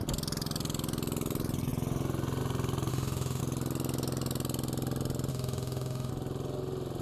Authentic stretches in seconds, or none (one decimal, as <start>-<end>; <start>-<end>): 0.0-2.9; 3.4-5.3; 6.1-7.0